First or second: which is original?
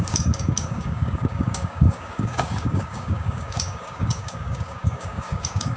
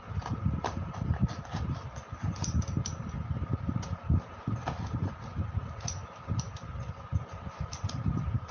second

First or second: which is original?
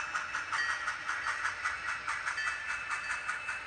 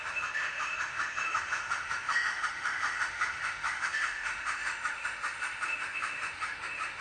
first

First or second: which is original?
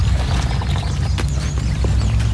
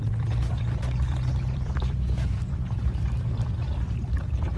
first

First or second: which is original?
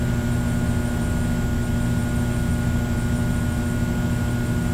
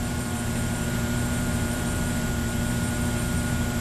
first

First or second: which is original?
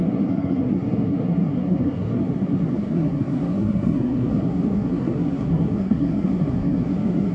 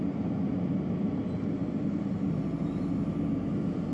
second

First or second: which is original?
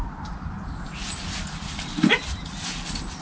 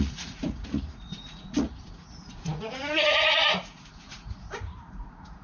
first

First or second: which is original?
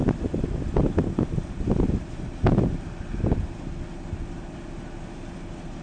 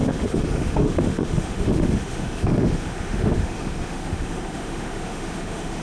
first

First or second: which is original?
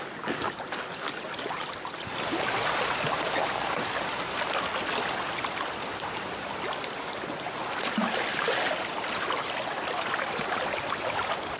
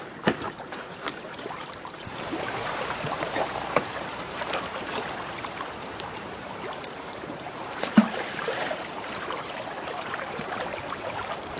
first